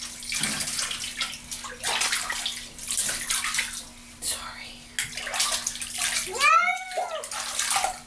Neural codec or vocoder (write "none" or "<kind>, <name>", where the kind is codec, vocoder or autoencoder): none